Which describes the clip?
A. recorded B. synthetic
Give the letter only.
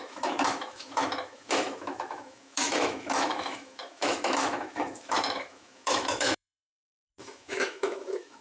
B